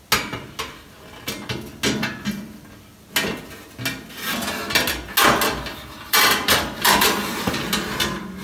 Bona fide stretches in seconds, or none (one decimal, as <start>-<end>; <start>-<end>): 0.0-5.7; 7.6-8.4